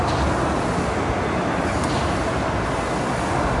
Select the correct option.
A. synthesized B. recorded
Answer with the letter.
B